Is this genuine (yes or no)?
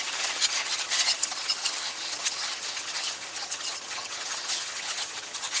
no